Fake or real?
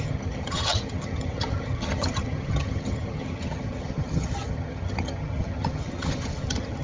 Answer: fake